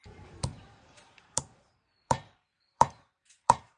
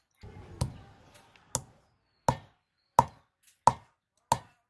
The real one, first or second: second